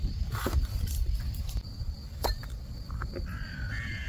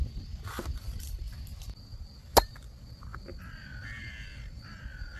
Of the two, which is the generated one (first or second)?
first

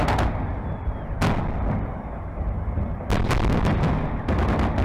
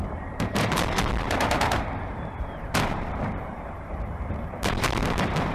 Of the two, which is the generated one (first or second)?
second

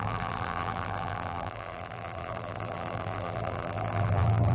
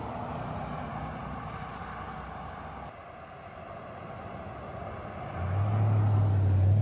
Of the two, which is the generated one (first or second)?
first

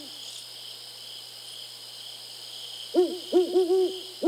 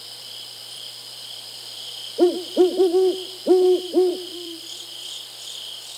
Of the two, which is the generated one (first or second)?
second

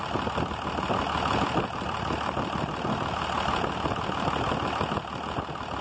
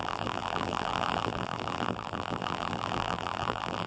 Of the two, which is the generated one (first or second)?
second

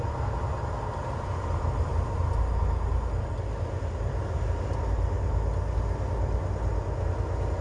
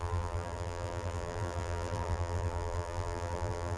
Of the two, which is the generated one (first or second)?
second